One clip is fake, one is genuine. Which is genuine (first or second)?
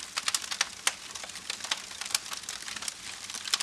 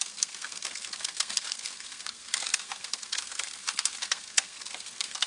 first